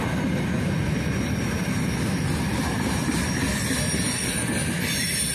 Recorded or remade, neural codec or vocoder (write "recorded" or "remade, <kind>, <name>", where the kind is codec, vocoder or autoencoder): recorded